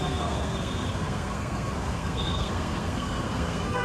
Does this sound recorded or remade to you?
remade